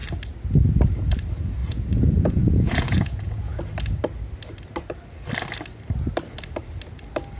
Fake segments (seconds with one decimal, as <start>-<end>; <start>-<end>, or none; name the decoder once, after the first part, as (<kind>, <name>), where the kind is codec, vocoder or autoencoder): 1.6-3.6 (vocoder, Vocos)